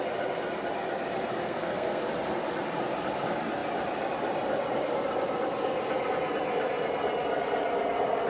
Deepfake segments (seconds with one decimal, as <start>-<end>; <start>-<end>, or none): 1.4-2.0